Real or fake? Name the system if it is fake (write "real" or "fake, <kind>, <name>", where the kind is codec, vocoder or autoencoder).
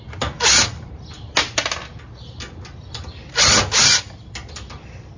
real